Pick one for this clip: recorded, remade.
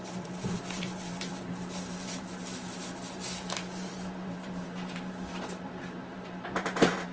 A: remade